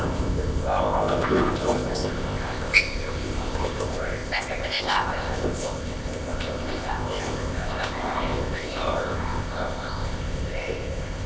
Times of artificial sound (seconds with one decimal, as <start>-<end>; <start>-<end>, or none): 0.0-11.3